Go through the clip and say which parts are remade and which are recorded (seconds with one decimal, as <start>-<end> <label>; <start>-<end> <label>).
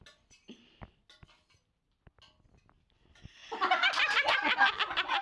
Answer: 0.0-5.2 recorded